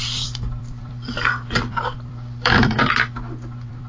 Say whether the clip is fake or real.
fake